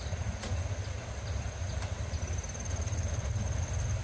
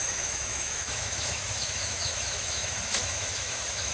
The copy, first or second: second